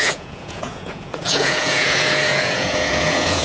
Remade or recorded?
remade